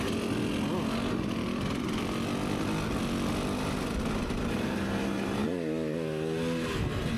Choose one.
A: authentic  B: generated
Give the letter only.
A